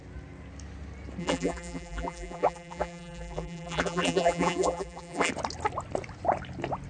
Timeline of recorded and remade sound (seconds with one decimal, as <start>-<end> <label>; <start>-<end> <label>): 0.0-1.2 recorded; 1.2-5.3 remade; 5.3-6.9 recorded